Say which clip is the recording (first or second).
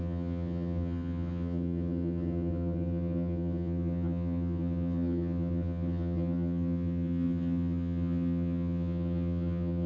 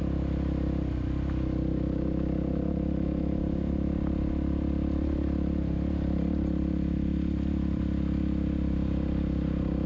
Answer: second